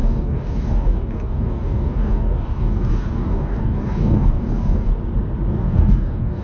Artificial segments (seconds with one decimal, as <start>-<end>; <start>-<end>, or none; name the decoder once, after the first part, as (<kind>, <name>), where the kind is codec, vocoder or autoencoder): 0.0-4.9 (codec, DAC); 5.5-6.4